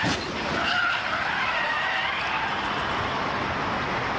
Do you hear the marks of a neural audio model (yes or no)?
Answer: no